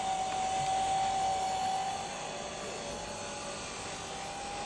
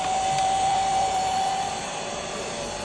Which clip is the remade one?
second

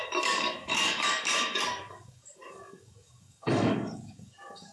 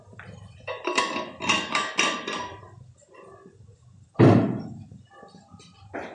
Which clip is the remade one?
first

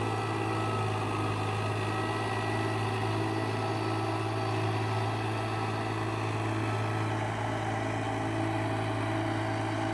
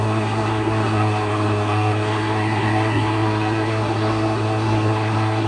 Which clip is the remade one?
second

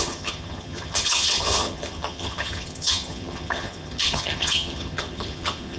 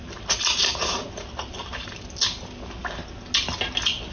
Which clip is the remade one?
first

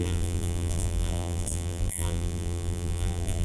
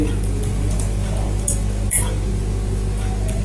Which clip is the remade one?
first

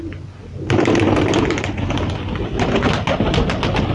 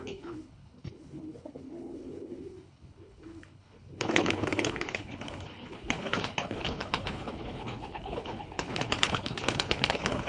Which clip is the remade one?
second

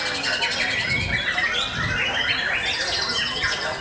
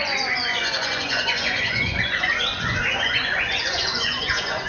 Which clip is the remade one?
second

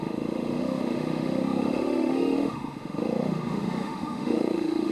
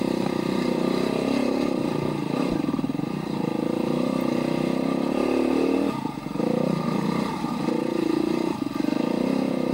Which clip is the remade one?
first